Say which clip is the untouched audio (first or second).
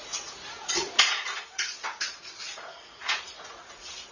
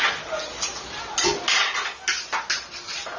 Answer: second